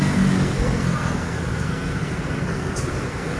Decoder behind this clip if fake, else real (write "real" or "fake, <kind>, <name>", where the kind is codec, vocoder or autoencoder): fake, codec, SNAC